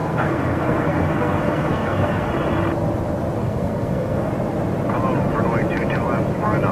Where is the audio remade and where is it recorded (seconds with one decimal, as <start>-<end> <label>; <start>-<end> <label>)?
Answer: 0.0-2.3 remade; 2.3-3.4 recorded; 3.4-4.3 remade; 4.3-6.7 recorded